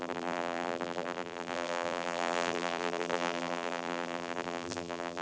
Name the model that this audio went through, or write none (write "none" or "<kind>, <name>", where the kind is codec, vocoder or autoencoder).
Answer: vocoder, BigVGAN v2